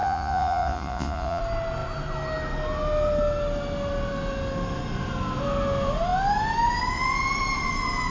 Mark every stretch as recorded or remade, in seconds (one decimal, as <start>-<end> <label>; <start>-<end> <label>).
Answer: 0.0-1.4 remade; 1.4-8.1 recorded